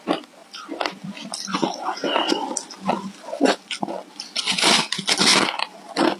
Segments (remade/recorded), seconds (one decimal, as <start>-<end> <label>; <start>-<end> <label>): 0.0-6.2 recorded